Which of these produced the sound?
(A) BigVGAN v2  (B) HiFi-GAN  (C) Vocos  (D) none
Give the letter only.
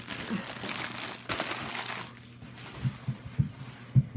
D